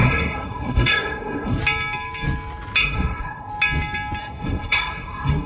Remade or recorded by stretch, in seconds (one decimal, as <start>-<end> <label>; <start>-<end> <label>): 0.0-1.6 remade; 1.6-2.8 recorded; 2.8-3.5 remade; 3.5-4.2 recorded; 4.2-5.5 remade